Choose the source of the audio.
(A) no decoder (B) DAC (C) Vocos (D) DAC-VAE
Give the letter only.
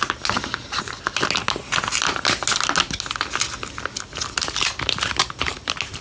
A